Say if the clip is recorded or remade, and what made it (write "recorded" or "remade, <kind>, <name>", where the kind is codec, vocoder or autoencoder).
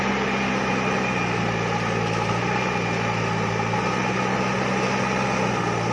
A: recorded